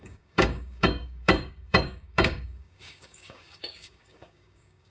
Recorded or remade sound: remade